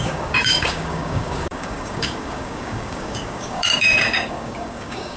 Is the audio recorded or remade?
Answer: remade